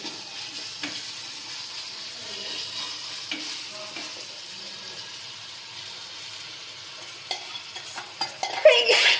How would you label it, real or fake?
real